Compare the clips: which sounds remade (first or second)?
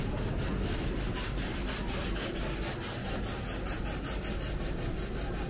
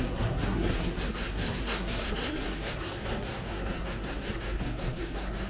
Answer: second